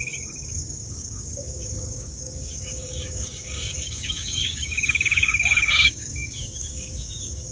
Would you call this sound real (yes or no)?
no